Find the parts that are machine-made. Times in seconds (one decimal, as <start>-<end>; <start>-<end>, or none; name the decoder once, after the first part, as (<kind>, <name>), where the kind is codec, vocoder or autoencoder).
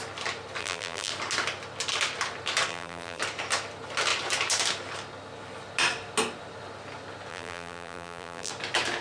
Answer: 0.6-1.1 (vocoder, BigVGAN v2); 2.7-3.2; 7.3-8.5